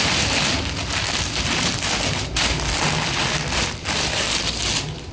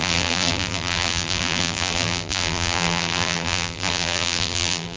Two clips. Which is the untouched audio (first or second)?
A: first